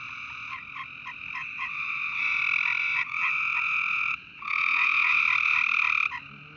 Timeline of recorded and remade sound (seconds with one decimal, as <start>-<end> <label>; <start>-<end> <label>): 0.0-1.4 recorded; 1.4-2.4 remade; 2.4-2.8 recorded; 2.8-5.2 remade; 5.2-6.6 recorded